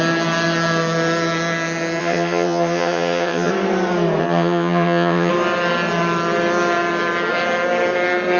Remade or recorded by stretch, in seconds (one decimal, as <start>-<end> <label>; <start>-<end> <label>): 0.0-2.0 recorded; 2.0-3.5 remade; 3.5-4.2 recorded; 4.2-5.3 remade; 5.3-8.4 recorded